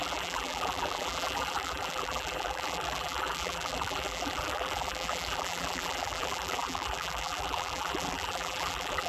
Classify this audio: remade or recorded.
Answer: remade